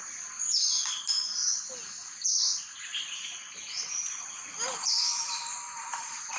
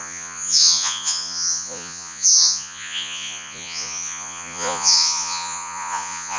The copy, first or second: second